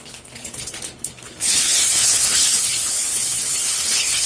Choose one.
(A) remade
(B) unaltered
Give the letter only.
A